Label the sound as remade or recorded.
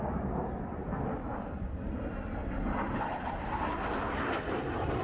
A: recorded